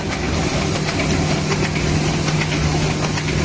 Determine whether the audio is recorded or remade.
recorded